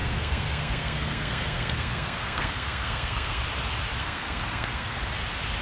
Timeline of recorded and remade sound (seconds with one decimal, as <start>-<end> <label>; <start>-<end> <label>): 0.0-3.4 remade; 3.4-4.0 recorded; 4.0-5.0 remade; 5.0-5.6 recorded